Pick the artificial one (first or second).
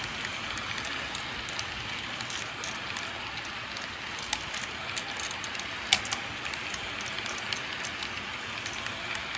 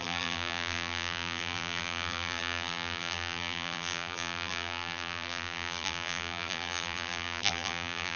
second